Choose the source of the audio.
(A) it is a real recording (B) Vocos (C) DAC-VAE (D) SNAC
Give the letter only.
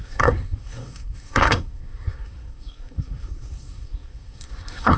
D